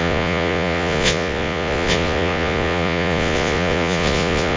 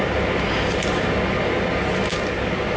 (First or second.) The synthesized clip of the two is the first